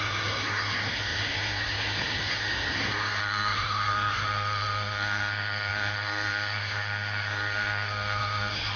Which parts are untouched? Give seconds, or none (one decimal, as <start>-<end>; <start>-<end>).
none